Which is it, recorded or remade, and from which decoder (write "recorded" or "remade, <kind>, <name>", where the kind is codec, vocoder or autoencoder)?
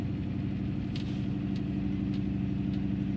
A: recorded